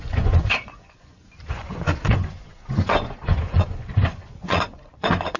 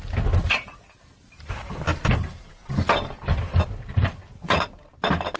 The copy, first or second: first